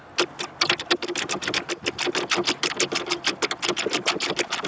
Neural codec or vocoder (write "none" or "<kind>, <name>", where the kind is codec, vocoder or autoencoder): none